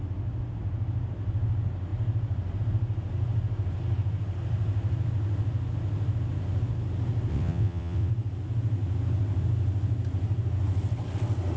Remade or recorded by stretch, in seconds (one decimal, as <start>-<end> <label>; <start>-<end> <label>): 0.0-7.3 recorded; 7.3-8.1 remade; 8.1-11.6 recorded